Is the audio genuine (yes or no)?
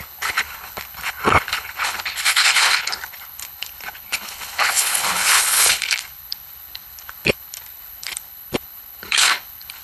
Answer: no